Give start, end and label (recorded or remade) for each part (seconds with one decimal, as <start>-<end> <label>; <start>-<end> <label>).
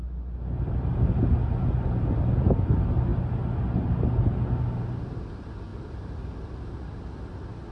0.0-5.7 recorded; 5.7-6.3 remade; 6.3-7.7 recorded